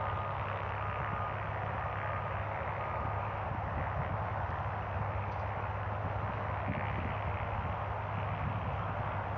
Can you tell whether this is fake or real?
real